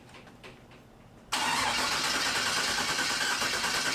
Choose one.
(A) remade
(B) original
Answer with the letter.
B